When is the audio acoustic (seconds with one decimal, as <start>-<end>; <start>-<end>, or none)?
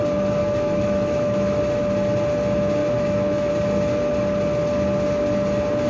0.0-0.4; 1.6-2.8; 3.5-5.9